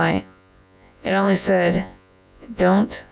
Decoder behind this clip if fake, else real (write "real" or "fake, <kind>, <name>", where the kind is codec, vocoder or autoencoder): fake, vocoder, Vocos